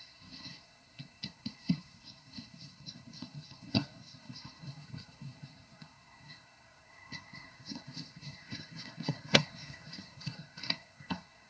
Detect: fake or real fake